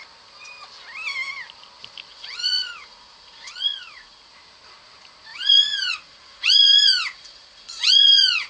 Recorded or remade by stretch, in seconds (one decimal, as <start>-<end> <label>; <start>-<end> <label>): 0.0-2.1 recorded; 2.1-4.3 remade; 4.3-5.3 recorded; 5.3-8.5 remade